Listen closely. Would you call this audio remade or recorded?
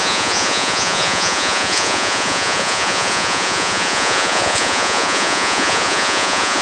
remade